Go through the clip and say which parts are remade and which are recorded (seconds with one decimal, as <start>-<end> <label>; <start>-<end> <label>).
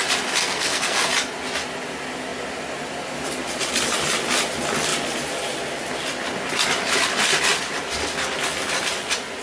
0.0-0.4 recorded; 0.4-1.1 remade; 1.1-9.4 recorded